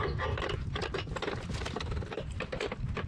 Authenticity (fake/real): real